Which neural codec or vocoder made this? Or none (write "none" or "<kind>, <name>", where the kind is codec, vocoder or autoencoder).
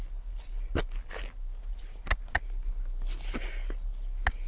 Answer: none